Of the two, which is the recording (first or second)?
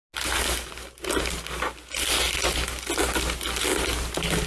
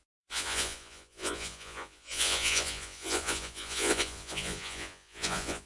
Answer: first